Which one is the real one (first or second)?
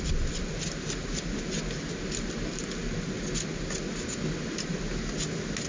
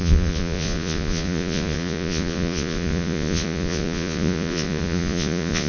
first